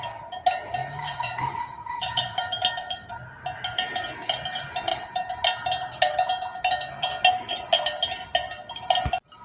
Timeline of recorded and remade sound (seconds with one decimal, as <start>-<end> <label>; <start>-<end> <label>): 0.0-0.8 recorded; 0.8-3.1 remade; 3.1-9.4 recorded